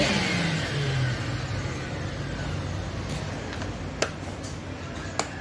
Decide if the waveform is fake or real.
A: real